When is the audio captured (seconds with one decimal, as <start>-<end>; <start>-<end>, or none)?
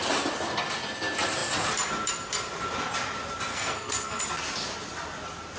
0.0-3.5; 4.2-5.6